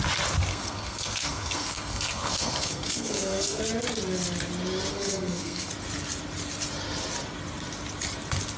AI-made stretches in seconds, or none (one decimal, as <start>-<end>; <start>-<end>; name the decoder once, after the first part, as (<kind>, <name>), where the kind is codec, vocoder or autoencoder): 0.5-3.6 (codec, SNAC); 4.9-5.7